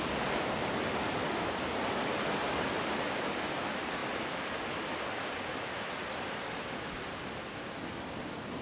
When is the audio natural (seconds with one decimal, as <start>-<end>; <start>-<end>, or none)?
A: 0.0-8.6